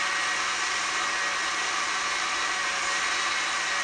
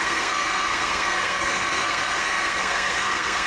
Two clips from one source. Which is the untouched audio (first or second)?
first